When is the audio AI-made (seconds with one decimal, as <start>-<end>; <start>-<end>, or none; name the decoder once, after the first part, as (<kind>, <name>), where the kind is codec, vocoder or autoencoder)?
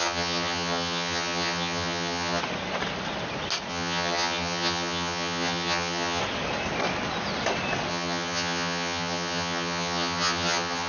0.0-2.4 (vocoder, HiFi-GAN); 3.7-6.2; 7.9-10.9